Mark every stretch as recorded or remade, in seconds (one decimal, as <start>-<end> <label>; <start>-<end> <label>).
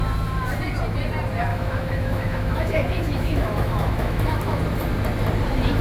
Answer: 0.0-1.5 recorded; 1.5-4.6 remade; 4.6-5.8 recorded